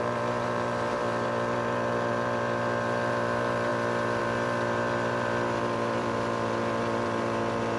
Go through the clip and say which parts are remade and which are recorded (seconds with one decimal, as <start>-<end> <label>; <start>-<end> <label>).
0.0-7.8 remade